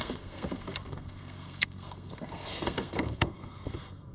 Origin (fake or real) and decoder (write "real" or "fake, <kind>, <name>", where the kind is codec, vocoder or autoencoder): fake, codec, SNAC